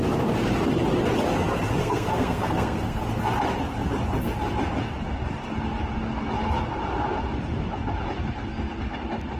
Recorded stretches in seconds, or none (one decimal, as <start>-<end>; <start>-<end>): 0.0-1.8; 3.0-9.4